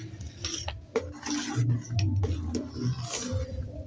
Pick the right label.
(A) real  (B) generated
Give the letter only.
A